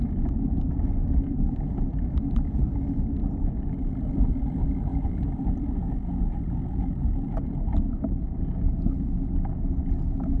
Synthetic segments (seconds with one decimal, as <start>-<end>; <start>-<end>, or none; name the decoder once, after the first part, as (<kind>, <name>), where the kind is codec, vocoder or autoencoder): 3.2-4.4 (vocoder, BigVGAN v2); 4.9-6.2